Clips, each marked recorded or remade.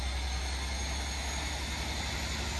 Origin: recorded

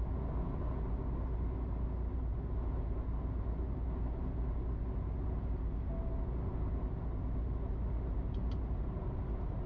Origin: recorded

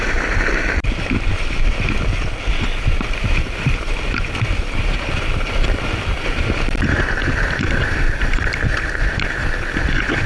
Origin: remade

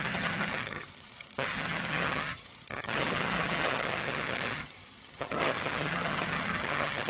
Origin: remade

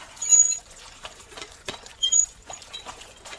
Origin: remade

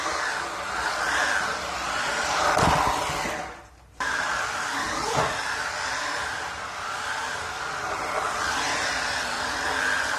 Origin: recorded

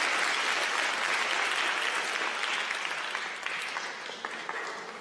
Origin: recorded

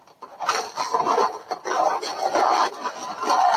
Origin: recorded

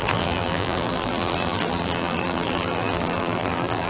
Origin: remade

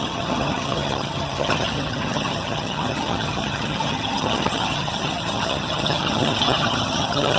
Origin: remade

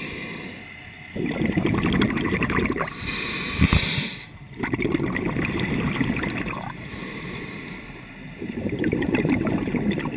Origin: recorded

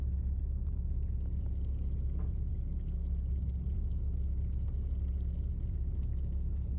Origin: recorded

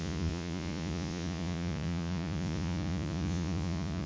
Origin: remade